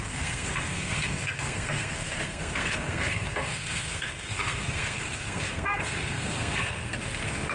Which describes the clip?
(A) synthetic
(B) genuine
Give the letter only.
A